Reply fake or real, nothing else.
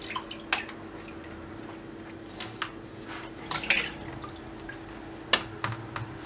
real